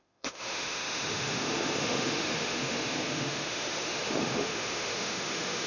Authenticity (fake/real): fake